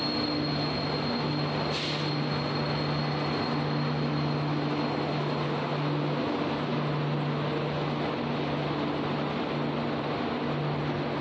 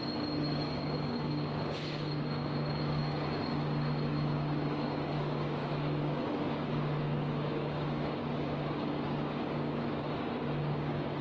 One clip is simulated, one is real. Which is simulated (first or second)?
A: second